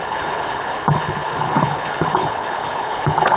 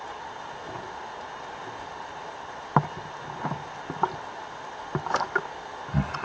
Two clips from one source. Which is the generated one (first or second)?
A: first